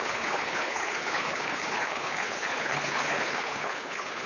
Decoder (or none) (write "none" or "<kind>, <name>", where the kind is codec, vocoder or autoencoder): codec, HILCodec